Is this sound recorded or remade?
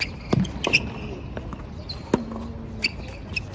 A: recorded